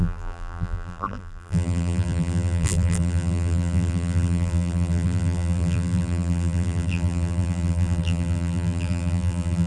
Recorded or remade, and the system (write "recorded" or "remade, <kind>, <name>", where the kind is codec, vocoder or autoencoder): remade, vocoder, BigVGAN v2